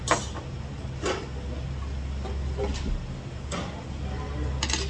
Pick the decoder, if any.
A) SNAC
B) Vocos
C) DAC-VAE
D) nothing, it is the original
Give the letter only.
D